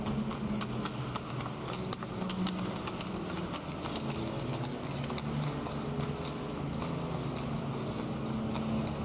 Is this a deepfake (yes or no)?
no